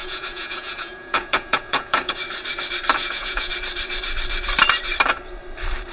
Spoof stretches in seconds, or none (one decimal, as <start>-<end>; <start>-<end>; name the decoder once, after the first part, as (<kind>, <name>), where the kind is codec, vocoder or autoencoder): 0.0-2.2 (vocoder, Vocos); 3.0-3.5